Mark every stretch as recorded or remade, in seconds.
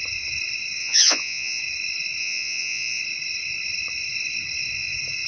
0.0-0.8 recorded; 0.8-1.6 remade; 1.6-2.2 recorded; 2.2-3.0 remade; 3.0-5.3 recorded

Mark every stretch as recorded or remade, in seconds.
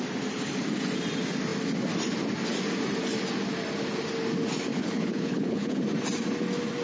0.0-4.7 recorded; 4.7-5.8 remade; 5.8-6.8 recorded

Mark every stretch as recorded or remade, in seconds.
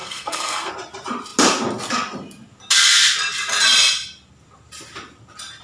0.0-0.7 remade; 0.7-5.6 recorded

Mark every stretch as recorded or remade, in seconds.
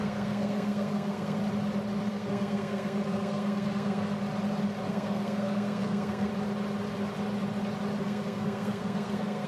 0.0-1.4 remade; 1.4-2.1 recorded; 2.1-4.2 remade; 4.2-4.9 recorded; 4.9-6.3 remade; 6.3-8.0 recorded; 8.0-9.5 remade